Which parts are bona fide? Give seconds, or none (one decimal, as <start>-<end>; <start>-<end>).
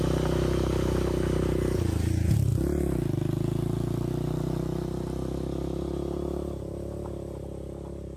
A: 0.0-8.2